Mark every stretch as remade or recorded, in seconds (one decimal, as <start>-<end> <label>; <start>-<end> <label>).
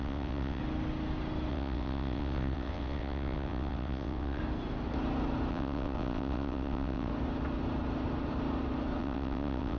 0.0-0.6 remade; 0.6-1.5 recorded; 1.5-4.4 remade; 4.4-5.5 recorded; 5.5-7.1 remade; 7.1-9.0 recorded; 9.0-9.8 remade